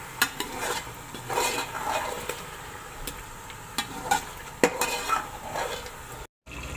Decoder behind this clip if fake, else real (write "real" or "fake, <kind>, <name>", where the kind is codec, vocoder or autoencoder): real